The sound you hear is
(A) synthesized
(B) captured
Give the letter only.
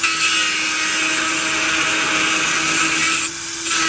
B